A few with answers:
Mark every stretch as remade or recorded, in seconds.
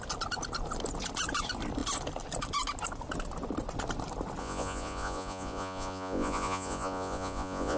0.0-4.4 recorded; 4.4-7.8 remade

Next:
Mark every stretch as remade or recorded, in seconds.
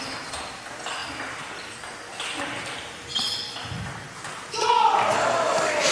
0.0-5.9 recorded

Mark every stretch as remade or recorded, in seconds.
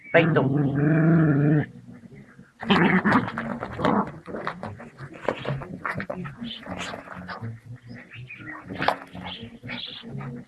0.0-3.5 recorded; 3.5-6.7 remade; 6.7-10.5 recorded